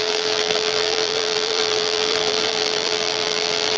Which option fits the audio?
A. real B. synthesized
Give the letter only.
B